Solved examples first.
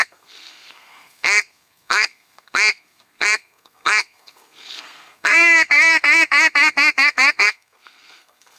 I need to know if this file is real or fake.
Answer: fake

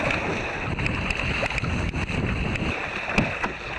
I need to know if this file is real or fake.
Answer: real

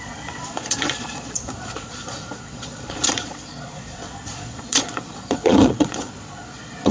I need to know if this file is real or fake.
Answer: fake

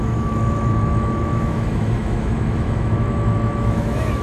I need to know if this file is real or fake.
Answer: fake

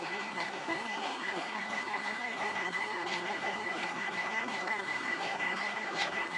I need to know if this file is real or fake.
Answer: fake